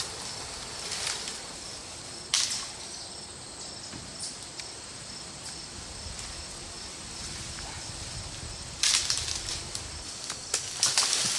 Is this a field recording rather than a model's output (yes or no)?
no